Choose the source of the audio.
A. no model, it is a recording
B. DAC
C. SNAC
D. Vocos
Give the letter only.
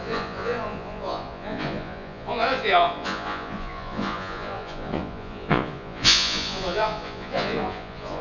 D